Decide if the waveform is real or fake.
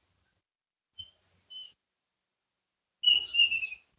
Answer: real